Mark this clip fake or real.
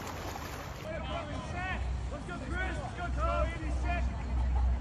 real